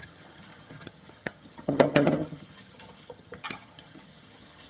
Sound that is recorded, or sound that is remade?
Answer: remade